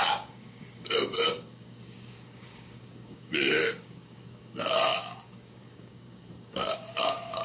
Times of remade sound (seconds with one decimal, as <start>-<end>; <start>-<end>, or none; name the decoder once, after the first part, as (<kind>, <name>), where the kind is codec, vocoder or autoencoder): 0.0-7.4 (codec, DAC)